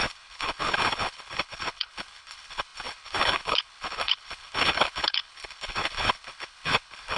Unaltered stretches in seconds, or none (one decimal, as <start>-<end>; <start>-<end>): none